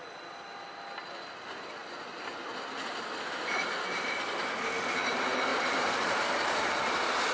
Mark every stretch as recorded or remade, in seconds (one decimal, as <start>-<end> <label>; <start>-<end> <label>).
0.0-5.5 recorded; 5.5-6.7 remade; 6.7-7.3 recorded